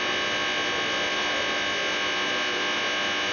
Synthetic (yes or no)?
no